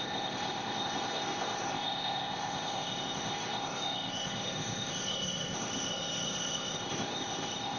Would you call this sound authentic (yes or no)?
no